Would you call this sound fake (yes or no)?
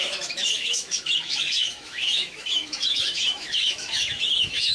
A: yes